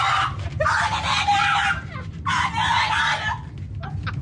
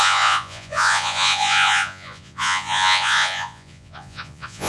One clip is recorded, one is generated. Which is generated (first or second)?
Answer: second